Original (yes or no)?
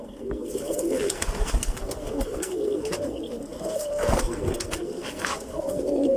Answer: no